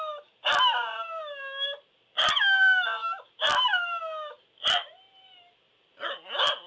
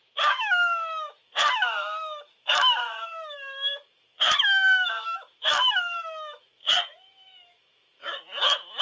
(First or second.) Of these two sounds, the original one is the first